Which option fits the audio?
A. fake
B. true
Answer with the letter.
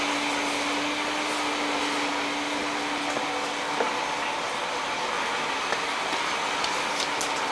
B